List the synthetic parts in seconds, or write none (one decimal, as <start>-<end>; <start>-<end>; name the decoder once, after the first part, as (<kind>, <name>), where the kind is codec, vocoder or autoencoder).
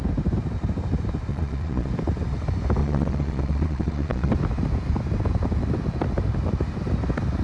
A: 1.3-1.9 (vocoder, Vocos); 2.8-4.3